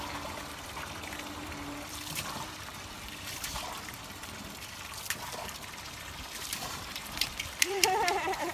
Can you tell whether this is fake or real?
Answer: fake